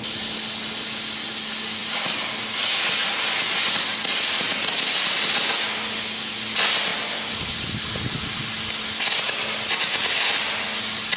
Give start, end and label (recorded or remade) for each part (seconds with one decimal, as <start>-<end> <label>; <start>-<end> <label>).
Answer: 0.0-6.9 recorded; 6.9-7.8 remade; 7.8-11.2 recorded

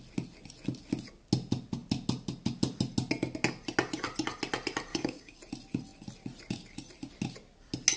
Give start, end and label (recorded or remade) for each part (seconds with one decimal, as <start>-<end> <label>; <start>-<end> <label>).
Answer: 0.0-4.9 recorded; 4.9-5.4 remade; 5.4-8.0 recorded